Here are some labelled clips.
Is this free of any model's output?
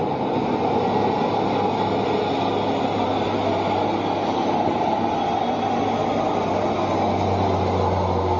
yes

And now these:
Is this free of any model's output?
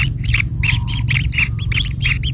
yes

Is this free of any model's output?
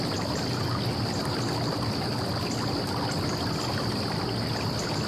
yes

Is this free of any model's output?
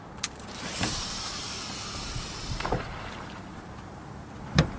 no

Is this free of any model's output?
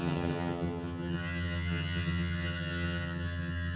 no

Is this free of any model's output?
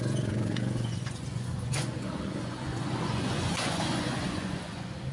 no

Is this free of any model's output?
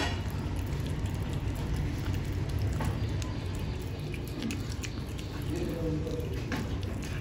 yes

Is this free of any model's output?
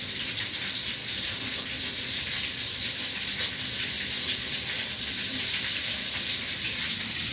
yes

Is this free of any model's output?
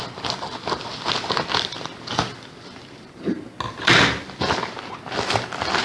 yes